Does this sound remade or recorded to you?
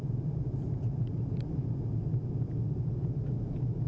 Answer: recorded